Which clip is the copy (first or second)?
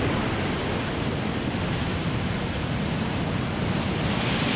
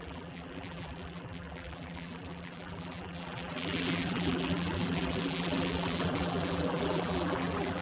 second